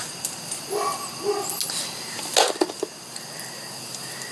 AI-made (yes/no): no